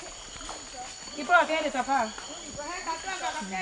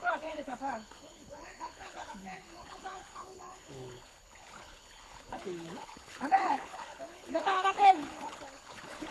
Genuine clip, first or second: first